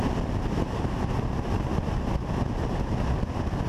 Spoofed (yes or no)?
no